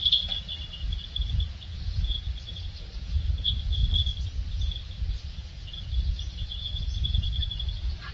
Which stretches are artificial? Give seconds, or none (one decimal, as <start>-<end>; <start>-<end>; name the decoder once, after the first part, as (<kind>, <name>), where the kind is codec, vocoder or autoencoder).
0.8-3.8 (vocoder, Vocos); 4.5-8.1